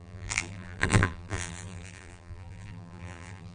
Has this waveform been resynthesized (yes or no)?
yes